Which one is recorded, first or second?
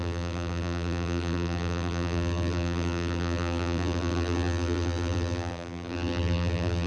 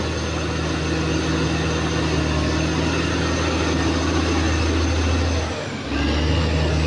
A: second